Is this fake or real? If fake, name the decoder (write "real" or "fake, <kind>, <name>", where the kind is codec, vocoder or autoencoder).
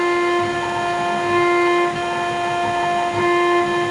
real